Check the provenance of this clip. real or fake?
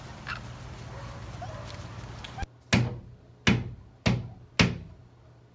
real